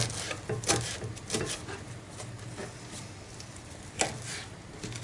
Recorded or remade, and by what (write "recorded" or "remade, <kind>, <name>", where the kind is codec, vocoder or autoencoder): recorded